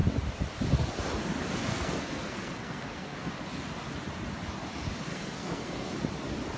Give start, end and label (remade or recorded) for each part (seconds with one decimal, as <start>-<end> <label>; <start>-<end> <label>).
0.0-1.7 recorded; 1.7-3.3 remade; 3.3-5.1 recorded; 5.1-5.9 remade; 5.9-6.6 recorded